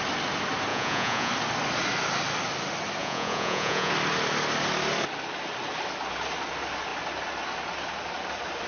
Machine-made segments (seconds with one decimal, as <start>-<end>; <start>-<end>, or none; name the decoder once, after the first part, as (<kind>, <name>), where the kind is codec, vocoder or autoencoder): 0.7-1.3 (vocoder, Vocos); 3.0-3.9